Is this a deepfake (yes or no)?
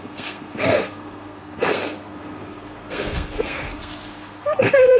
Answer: yes